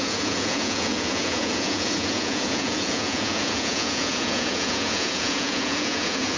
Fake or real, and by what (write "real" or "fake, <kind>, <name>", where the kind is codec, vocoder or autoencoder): fake, vocoder, Vocos